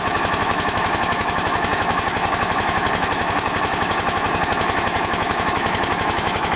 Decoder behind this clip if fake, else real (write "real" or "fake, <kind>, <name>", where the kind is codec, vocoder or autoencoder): fake, autoencoder, DAC-VAE